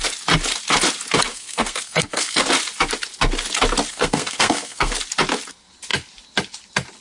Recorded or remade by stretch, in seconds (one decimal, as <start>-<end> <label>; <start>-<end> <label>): 0.0-1.3 recorded; 1.3-2.4 remade; 2.4-3.9 recorded; 3.9-4.9 remade; 4.9-7.0 recorded